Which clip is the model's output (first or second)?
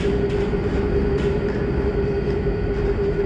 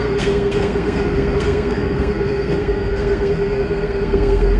second